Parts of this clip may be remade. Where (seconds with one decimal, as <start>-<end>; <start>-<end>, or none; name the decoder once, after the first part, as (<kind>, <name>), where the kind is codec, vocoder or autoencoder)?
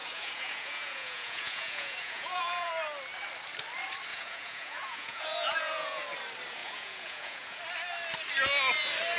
0.0-2.7 (vocoder, Vocos); 4.1-6.0; 6.6-7.6